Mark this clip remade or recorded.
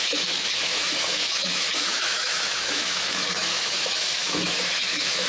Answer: remade